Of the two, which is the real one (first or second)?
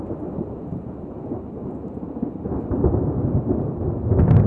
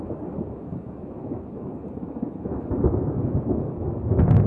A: first